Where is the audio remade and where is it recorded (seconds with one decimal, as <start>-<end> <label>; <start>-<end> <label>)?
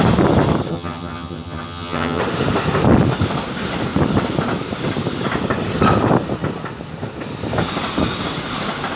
0.0-0.7 recorded; 0.7-2.2 remade; 2.2-9.0 recorded